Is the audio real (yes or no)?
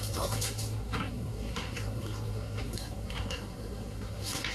no